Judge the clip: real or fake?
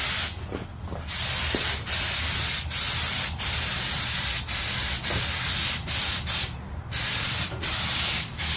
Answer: real